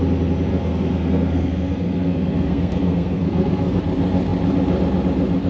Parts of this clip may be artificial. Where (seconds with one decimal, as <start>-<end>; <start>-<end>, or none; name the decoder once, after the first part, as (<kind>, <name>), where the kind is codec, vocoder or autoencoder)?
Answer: 0.5-3.8 (codec, SNAC)